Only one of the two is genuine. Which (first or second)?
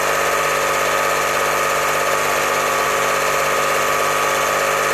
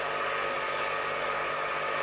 first